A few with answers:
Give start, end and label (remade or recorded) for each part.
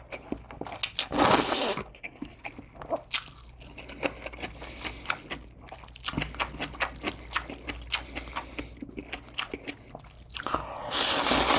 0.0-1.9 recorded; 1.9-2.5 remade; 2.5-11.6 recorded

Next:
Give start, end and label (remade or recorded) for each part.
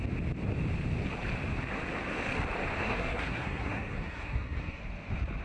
0.0-2.8 recorded; 2.8-4.8 remade; 4.8-5.4 recorded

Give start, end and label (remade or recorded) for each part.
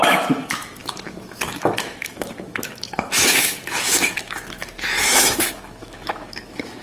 0.0-6.8 remade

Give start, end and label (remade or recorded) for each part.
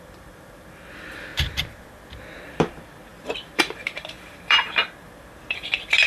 0.0-1.3 remade; 1.3-2.4 recorded; 2.4-6.1 remade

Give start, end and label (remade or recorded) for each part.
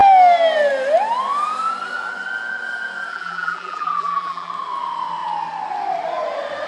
0.0-3.1 recorded; 3.1-4.5 remade; 4.5-6.7 recorded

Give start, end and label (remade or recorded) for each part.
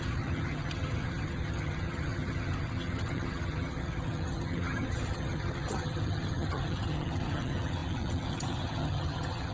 0.0-9.5 remade